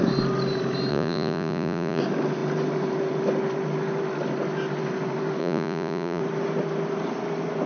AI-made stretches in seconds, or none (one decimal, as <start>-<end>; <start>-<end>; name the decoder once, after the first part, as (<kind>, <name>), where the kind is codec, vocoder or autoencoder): 0.9-2.0 (vocoder, Vocos); 5.4-6.2